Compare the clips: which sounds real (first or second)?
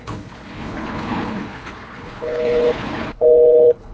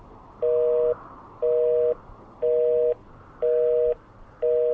second